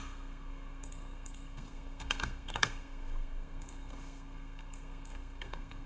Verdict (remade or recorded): remade